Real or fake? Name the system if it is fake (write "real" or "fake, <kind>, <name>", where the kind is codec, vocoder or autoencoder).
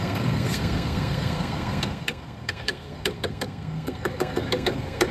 fake, codec, SNAC